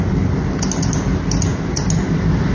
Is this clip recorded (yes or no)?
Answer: yes